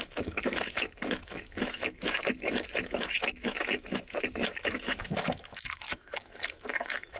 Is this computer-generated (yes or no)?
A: yes